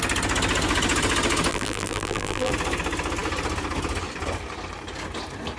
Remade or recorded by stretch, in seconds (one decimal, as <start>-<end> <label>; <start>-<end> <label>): 0.0-1.5 recorded; 1.5-2.5 remade; 2.5-5.6 recorded